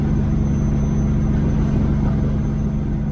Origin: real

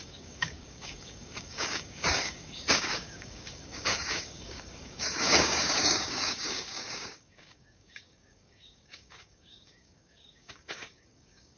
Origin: fake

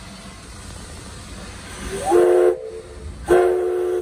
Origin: real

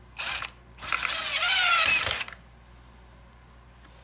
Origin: real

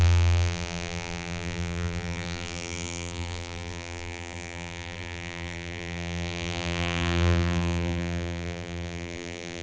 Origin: fake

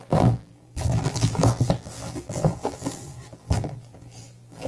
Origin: fake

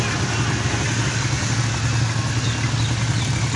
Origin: real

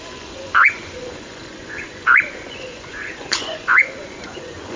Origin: fake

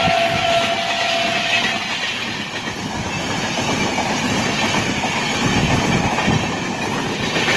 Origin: real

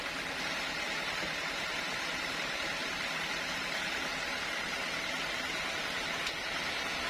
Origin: real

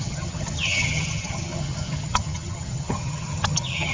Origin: fake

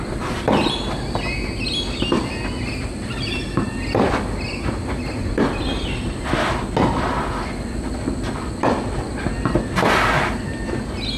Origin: real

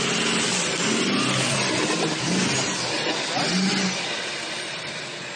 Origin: real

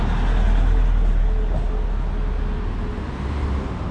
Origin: real